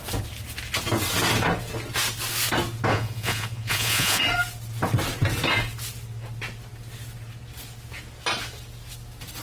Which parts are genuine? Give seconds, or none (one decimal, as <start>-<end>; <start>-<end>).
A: 0.0-2.9; 4.2-9.4